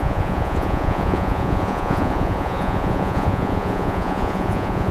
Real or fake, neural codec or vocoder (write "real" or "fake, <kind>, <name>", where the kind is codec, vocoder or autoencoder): fake, vocoder, Vocos